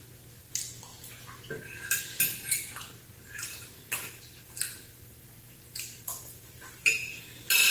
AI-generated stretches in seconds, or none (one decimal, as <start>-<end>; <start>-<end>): 3.4-7.2